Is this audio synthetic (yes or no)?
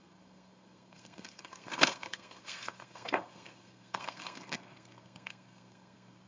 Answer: yes